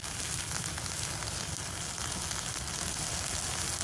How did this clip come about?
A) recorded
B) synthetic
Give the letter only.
A